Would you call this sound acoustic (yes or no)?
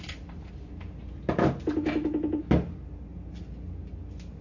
yes